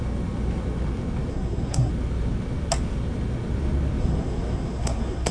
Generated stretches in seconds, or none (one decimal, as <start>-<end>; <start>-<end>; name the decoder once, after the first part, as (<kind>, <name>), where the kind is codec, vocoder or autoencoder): 1.3-1.9 (codec, SNAC); 4.0-5.3